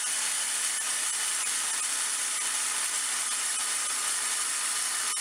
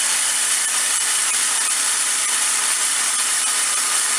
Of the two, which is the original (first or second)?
first